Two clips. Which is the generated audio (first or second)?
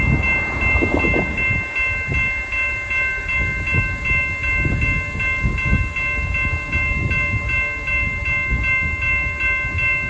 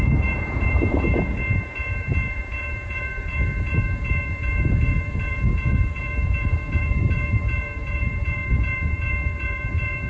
second